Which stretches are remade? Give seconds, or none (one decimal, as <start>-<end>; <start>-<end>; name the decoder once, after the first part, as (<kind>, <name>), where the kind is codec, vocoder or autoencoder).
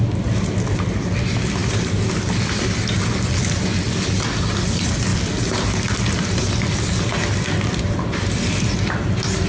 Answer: none